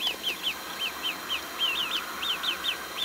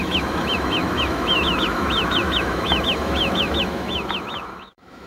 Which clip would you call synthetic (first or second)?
second